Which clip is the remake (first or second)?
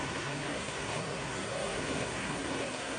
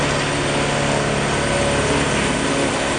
first